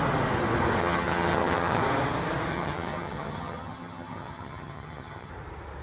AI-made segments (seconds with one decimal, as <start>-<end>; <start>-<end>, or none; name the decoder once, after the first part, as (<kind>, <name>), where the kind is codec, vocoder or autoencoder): 0.8-1.8 (vocoder, HiFi-GAN); 2.5-5.3